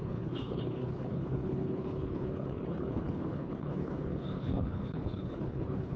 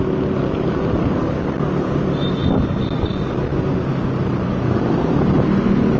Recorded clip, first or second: second